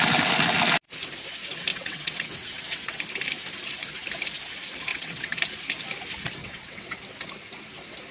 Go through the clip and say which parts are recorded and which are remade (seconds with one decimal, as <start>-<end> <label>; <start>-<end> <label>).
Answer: 0.0-1.7 recorded; 1.7-3.0 remade; 3.0-4.9 recorded; 4.9-5.4 remade; 5.4-6.4 recorded; 6.4-7.0 remade; 7.0-8.1 recorded